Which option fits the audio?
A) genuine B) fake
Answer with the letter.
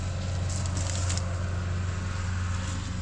A